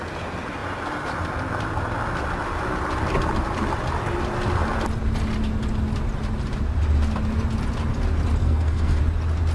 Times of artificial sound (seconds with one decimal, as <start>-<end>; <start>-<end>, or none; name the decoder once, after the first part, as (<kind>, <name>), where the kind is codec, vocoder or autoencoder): 8.4-9.0 (codec, SNAC)